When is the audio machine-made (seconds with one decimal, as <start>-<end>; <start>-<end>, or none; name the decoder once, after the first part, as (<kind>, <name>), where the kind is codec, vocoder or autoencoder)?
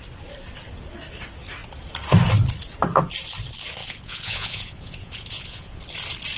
3.8-5.8 (vocoder, Vocos)